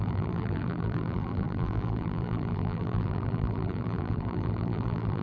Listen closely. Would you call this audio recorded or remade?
remade